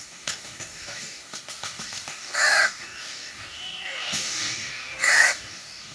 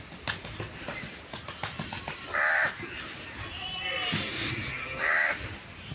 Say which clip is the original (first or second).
second